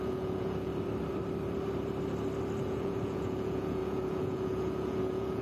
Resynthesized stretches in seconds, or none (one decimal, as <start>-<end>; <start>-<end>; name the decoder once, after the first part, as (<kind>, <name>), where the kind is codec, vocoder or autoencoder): 0.0-0.7 (vocoder, Vocos); 2.6-5.4